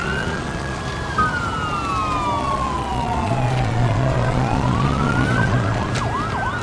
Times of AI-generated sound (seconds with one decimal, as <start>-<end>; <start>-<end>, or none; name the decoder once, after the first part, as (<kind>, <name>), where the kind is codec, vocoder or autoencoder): 0.0-0.8 (vocoder, Vocos); 2.4-5.9